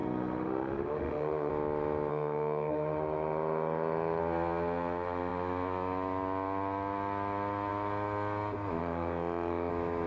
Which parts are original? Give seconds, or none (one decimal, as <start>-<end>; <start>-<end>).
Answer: 1.5-2.1; 4.2-8.8; 9.7-10.1